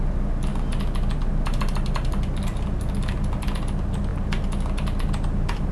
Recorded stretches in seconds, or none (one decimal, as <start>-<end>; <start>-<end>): 0.0-5.7